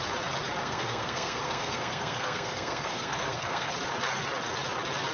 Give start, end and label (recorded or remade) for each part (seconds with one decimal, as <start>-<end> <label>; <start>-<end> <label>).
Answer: 0.0-0.6 recorded; 0.6-3.7 remade; 3.7-5.1 recorded